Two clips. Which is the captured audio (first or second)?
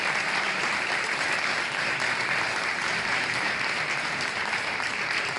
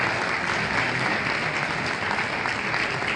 second